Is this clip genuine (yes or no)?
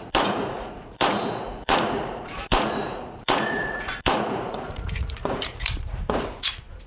no